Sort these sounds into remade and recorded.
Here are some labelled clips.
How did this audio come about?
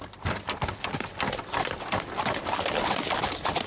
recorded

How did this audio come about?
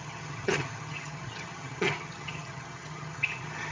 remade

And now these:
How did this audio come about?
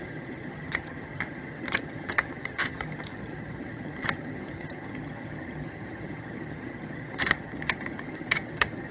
remade